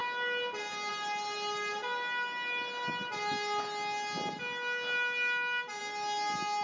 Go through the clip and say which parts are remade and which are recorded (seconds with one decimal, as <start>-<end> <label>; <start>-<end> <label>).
0.0-6.6 recorded

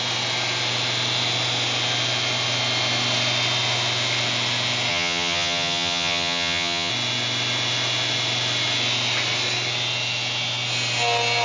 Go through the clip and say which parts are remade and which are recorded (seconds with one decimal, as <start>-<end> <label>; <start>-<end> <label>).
0.0-4.9 recorded; 4.9-6.9 remade; 6.9-11.4 recorded

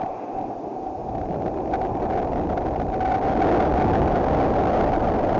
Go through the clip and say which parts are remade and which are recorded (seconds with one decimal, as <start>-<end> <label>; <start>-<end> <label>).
0.0-5.4 recorded

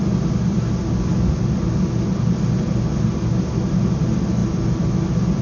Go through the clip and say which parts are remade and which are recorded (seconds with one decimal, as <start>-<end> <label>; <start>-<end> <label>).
0.0-5.4 recorded

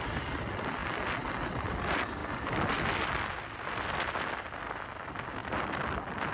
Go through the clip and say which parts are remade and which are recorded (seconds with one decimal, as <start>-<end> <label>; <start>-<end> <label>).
0.0-6.3 recorded

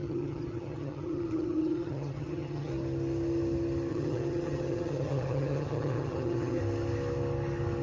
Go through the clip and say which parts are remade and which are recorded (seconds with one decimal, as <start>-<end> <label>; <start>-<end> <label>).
0.0-2.7 remade; 2.7-3.9 recorded; 3.9-6.6 remade; 6.6-7.8 recorded